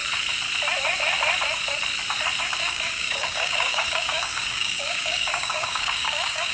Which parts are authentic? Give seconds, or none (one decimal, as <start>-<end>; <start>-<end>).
0.0-2.4